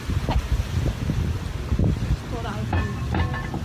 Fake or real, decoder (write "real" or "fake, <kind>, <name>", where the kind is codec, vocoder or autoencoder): real